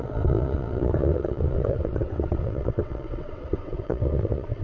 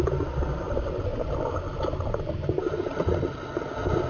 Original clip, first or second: second